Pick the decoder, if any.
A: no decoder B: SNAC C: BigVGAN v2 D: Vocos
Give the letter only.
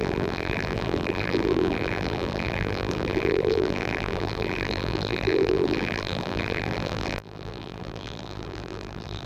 C